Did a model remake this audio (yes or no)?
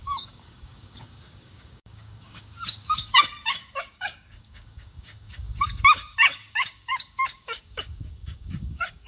yes